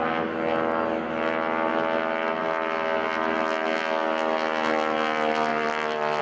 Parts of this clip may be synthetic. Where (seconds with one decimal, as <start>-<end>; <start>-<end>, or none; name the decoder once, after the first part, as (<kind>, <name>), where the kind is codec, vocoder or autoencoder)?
5.5-6.2 (vocoder, BigVGAN v2)